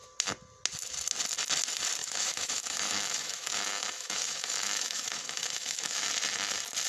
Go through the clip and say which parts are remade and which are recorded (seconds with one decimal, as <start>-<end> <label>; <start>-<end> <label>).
0.0-2.0 recorded; 2.0-6.1 remade; 6.1-6.9 recorded